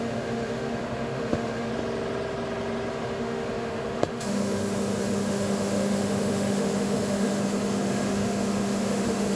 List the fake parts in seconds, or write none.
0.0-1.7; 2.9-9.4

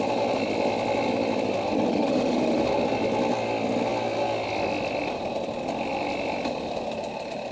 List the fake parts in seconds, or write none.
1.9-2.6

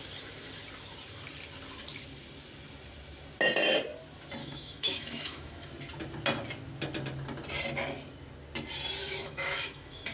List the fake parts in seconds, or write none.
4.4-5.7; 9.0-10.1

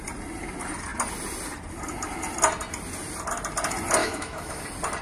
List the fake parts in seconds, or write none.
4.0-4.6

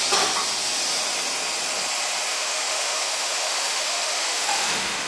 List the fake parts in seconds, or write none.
2.3-5.1